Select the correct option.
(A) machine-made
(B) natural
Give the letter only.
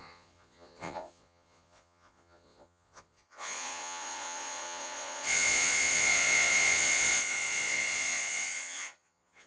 A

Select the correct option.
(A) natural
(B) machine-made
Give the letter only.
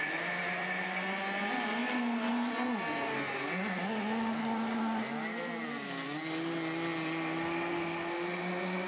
A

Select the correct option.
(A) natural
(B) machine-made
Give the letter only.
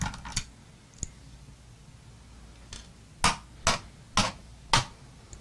A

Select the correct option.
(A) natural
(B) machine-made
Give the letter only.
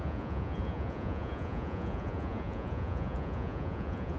B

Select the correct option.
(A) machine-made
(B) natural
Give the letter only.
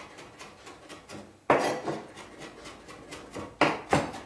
B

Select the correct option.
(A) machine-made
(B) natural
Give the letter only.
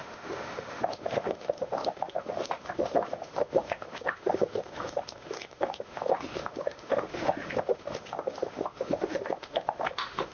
A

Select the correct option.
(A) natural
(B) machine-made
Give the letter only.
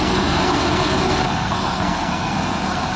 B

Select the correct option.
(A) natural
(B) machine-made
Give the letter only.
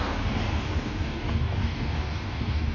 B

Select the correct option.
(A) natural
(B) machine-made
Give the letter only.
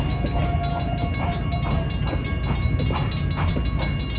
A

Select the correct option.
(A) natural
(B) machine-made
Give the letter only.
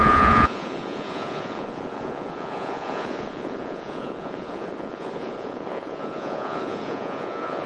B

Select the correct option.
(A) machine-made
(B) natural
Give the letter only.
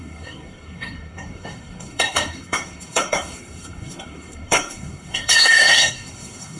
A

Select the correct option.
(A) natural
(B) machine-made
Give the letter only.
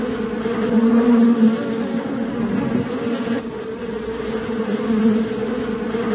A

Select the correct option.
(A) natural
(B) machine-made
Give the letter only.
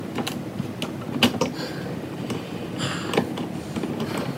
A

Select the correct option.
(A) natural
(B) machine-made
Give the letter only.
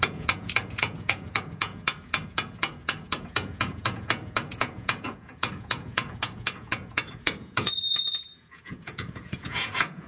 B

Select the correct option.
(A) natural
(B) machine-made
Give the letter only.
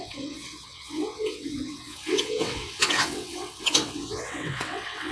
B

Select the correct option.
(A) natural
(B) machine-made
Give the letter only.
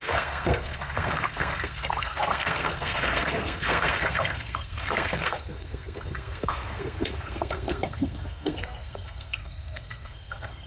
B